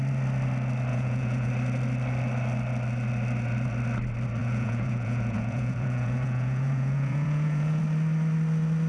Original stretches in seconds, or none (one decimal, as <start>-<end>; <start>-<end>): 0.0-0.9; 1.5-4.4; 7.8-8.9